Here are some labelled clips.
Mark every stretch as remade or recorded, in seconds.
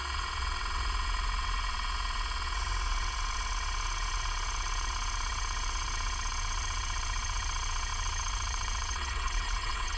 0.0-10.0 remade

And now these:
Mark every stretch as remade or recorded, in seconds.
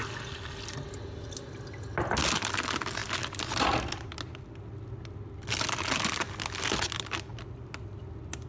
0.0-8.5 recorded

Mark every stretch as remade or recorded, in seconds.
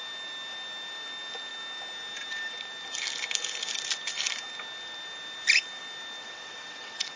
0.0-6.2 recorded; 6.2-7.2 remade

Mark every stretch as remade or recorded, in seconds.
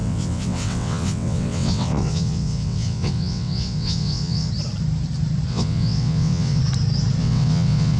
0.0-4.5 remade; 4.5-5.5 recorded; 5.5-6.6 remade; 6.6-7.2 recorded; 7.2-8.0 remade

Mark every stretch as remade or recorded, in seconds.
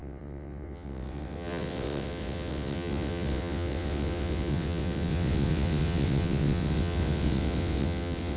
0.0-8.4 remade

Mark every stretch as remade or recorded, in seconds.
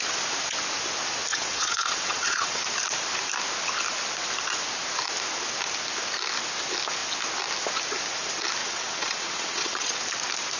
0.0-1.3 recorded; 1.3-2.6 remade; 2.6-8.6 recorded; 8.6-9.9 remade; 9.9-10.6 recorded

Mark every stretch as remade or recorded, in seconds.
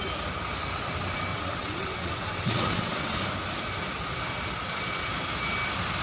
0.0-1.3 recorded; 1.3-3.2 remade; 3.2-6.0 recorded